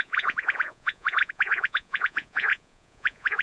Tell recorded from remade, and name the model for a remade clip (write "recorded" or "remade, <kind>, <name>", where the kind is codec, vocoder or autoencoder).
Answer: remade, vocoder, Vocos